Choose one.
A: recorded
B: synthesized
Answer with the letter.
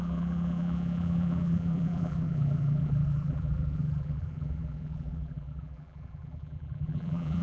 B